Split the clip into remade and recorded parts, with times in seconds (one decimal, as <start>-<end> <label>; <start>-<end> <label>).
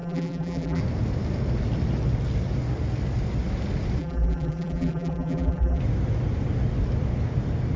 0.0-0.8 remade; 0.8-4.0 recorded; 4.0-5.8 remade; 5.8-7.8 recorded